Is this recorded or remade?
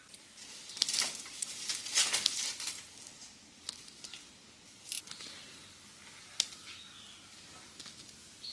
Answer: recorded